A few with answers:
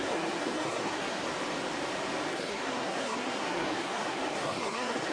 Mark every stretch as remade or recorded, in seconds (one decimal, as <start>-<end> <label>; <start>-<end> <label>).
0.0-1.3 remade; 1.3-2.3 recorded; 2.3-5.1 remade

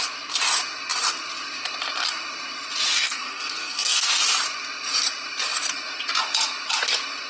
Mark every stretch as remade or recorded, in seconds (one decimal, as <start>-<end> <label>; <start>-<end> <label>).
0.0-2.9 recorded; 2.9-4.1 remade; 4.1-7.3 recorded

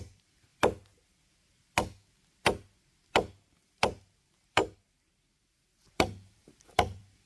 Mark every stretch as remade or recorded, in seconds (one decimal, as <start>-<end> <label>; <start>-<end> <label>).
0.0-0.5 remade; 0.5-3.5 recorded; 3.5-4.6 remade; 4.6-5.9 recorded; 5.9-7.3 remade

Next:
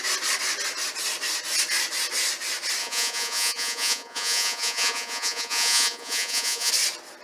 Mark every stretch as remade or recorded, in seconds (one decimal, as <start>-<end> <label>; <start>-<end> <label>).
0.0-2.8 recorded; 2.8-6.7 remade; 6.7-7.2 recorded

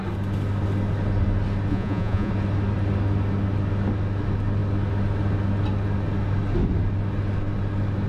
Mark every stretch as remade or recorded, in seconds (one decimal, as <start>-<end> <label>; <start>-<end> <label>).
0.0-1.7 recorded; 1.7-2.3 remade; 2.3-8.1 recorded

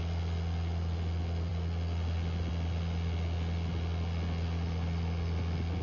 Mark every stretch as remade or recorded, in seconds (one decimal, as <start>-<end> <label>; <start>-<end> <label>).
0.0-5.8 recorded

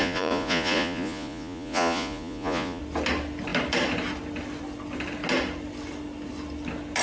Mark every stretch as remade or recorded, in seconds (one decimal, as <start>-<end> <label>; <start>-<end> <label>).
0.0-2.8 remade; 2.8-7.0 recorded

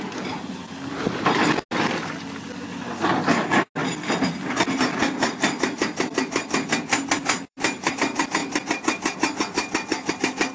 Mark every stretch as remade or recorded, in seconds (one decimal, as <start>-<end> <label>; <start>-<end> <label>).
0.0-7.2 recorded; 7.2-7.9 remade; 7.9-10.5 recorded